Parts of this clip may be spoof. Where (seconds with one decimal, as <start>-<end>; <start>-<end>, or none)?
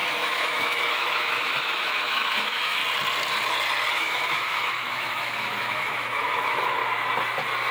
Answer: 0.0-2.8; 3.9-6.8